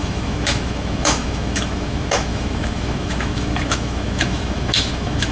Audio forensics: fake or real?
fake